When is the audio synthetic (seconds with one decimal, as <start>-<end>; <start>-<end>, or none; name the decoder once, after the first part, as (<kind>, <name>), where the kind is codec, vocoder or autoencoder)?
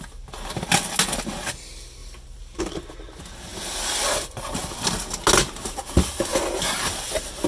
3.5-4.8 (vocoder, BigVGAN v2); 6.3-7.1